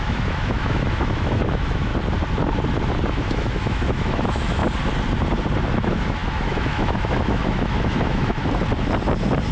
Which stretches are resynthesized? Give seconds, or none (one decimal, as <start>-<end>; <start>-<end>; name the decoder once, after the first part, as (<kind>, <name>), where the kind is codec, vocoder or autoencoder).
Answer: 0.0-1.9 (autoencoder, DAC-VAE); 3.1-4.6; 5.7-8.4